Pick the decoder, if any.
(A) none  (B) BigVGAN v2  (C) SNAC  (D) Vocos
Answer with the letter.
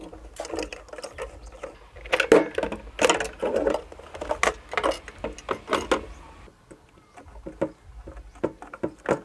A